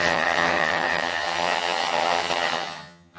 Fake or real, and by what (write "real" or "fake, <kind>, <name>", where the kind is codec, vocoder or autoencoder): fake, vocoder, HiFi-GAN